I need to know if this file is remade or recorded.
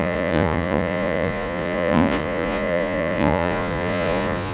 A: remade